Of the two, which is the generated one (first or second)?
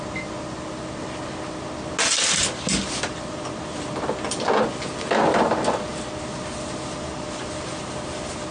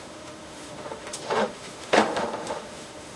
second